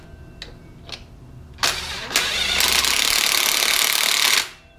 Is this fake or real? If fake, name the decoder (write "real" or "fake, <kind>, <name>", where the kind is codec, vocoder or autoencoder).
real